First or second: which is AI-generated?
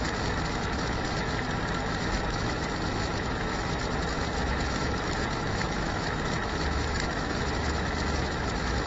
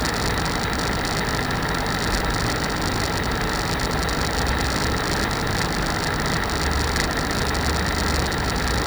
first